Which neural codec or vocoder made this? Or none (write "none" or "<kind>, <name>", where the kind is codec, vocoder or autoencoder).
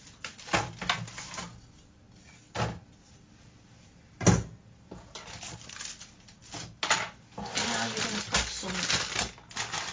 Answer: none